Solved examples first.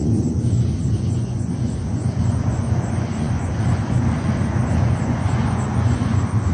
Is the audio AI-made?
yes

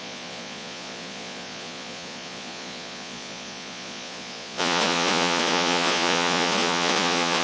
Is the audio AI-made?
yes